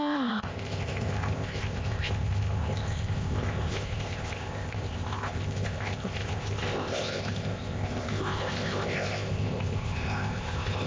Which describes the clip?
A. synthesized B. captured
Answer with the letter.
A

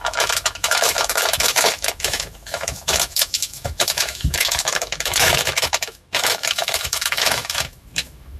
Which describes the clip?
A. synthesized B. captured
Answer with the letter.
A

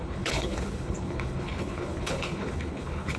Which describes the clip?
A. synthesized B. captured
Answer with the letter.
A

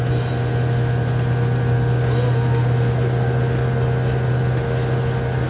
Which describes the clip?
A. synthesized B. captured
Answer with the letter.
B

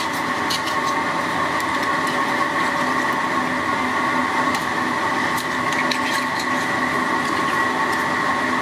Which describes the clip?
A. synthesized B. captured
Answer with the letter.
B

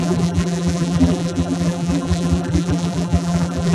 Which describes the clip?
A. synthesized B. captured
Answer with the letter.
A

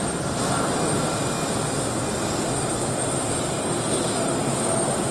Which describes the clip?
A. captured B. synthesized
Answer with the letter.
A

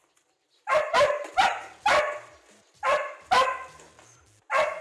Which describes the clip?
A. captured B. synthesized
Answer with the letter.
A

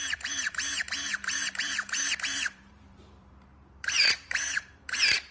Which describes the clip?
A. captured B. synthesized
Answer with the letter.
B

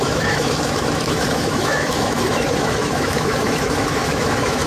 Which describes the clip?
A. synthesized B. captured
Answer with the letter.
A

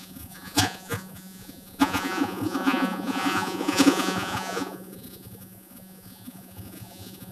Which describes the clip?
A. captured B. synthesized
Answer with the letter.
B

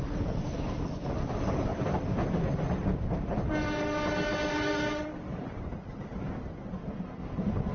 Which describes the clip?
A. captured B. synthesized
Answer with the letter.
A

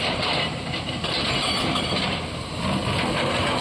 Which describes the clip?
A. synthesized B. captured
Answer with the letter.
B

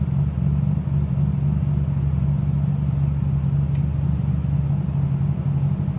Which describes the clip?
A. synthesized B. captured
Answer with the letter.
B